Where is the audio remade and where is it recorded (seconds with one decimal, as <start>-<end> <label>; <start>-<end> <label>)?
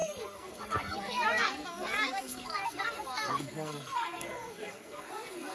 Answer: 0.0-5.5 remade